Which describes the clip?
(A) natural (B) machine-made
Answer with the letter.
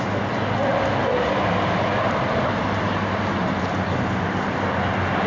A